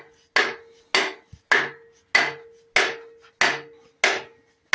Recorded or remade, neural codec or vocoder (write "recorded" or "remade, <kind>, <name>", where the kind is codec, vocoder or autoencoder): recorded